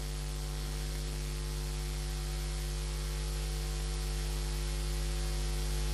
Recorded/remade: recorded